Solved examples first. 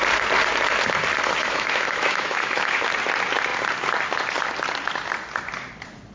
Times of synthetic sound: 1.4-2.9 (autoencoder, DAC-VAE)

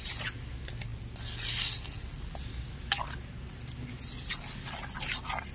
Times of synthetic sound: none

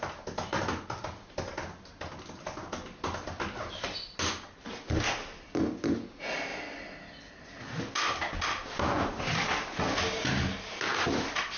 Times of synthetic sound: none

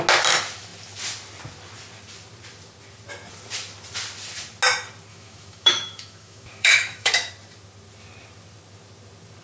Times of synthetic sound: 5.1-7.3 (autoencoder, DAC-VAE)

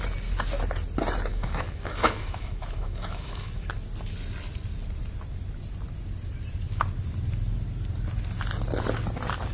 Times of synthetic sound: 1.3-3.7 (autoencoder, DAC-VAE)

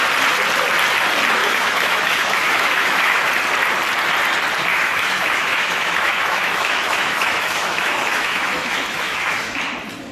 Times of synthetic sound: 1.4-3.3 (autoencoder, DAC-VAE); 4.7-9.6